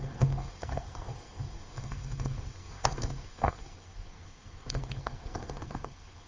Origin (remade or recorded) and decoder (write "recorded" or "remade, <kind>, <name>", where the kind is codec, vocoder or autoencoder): remade, codec, SNAC